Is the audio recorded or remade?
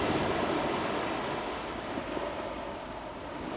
recorded